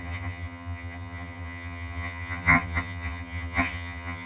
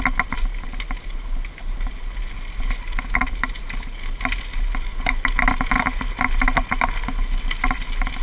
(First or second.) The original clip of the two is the second